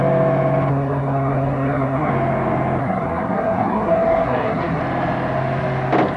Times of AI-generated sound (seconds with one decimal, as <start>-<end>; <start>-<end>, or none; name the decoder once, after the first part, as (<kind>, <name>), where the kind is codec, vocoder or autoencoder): 0.7-2.1 (codec, SNAC); 2.8-4.8